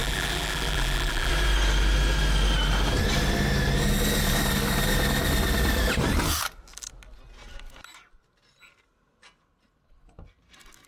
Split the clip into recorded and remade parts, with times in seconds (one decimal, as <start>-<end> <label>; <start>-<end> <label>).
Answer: 0.0-1.3 remade; 1.3-10.9 recorded